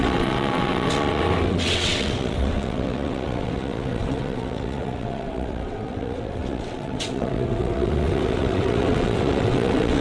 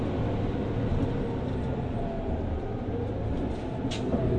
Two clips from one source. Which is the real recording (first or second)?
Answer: second